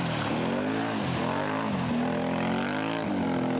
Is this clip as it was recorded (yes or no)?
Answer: yes